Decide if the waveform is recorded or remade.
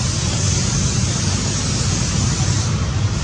recorded